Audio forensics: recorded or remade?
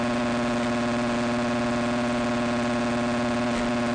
recorded